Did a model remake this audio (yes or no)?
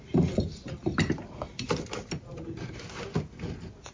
no